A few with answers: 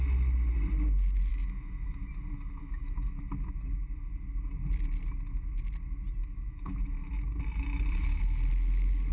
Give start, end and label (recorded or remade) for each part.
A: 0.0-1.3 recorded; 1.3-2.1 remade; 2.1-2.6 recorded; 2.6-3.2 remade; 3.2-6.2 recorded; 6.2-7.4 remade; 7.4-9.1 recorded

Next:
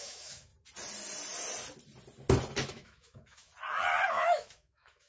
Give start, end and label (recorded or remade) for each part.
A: 0.0-0.5 remade; 0.5-2.7 recorded; 2.7-3.5 remade; 3.5-4.1 recorded; 4.1-5.1 remade

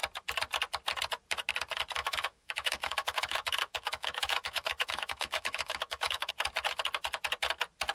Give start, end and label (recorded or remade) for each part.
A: 0.0-2.0 recorded; 2.0-6.3 remade; 6.3-7.9 recorded

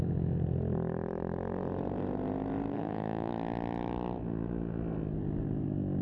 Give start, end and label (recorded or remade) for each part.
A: 0.0-2.7 recorded; 2.7-3.3 remade; 3.3-6.0 recorded